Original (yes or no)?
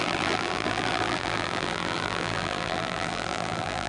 no